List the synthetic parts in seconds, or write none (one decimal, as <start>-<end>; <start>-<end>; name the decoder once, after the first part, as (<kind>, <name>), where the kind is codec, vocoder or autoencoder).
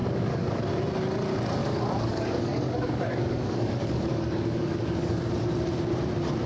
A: 0.0-0.6 (codec, DAC); 1.6-5.3